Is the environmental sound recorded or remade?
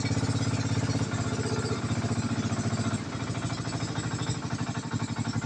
recorded